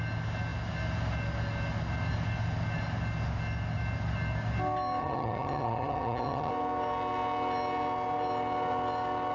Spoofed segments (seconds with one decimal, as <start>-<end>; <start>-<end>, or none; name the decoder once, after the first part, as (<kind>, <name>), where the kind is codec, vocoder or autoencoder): 5.0-6.5 (vocoder, HiFi-GAN)